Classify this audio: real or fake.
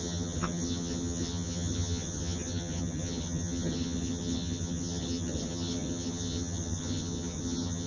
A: fake